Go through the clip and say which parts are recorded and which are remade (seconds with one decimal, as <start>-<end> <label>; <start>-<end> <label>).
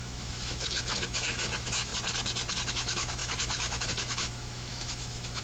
0.0-1.9 remade; 1.9-2.7 recorded; 2.7-5.4 remade